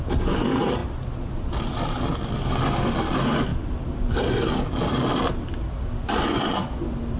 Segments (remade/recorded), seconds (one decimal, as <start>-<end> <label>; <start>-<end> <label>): 0.0-3.5 recorded; 3.5-7.2 remade